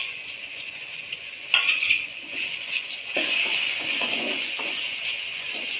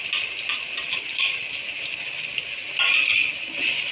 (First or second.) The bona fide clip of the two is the second